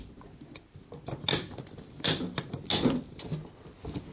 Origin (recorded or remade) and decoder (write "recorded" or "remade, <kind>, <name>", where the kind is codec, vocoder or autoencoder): recorded